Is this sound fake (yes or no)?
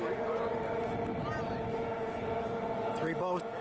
no